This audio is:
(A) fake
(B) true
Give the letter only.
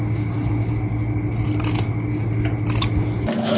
B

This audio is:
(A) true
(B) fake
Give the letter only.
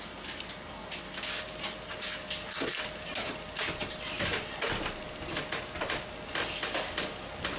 A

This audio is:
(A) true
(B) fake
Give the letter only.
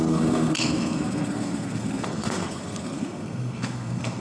B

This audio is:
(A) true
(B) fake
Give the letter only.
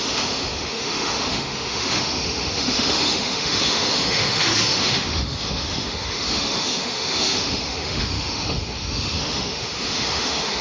B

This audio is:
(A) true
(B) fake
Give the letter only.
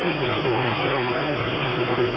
B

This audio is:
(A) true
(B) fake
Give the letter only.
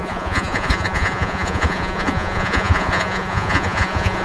B